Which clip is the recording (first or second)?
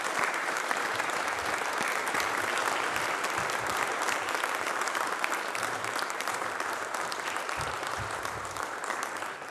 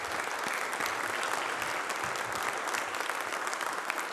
second